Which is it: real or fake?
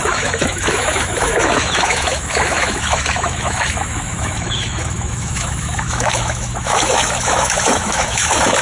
fake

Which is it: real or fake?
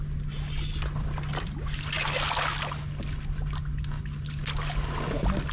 real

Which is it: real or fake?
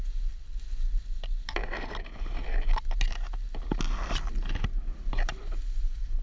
real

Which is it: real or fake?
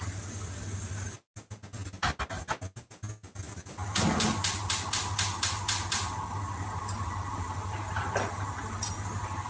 real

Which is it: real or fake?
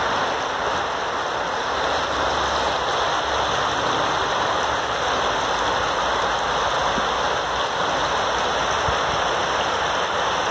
real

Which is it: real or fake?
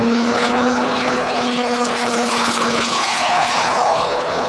fake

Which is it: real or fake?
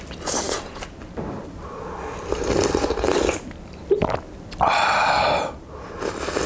real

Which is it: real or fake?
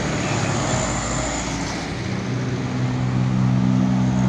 real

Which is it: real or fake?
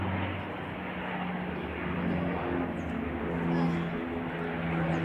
real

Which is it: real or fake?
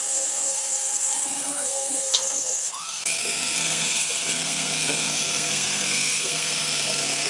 fake